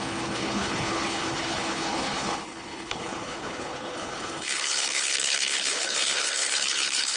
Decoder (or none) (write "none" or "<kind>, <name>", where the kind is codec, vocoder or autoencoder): codec, HILCodec